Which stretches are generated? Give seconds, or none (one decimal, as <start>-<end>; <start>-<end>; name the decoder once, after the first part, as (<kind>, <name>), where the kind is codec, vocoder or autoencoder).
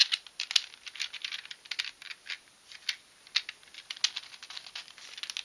none